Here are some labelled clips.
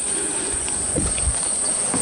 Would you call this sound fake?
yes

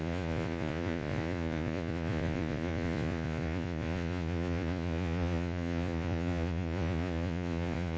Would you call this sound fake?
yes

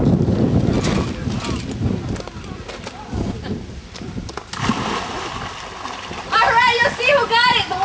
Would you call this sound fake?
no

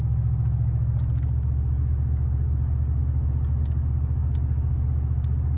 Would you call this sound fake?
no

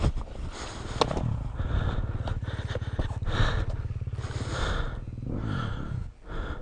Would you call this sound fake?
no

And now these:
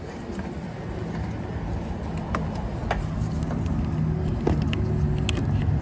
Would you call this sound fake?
no